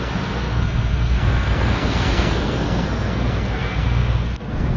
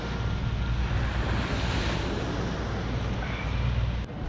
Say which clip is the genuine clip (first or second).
second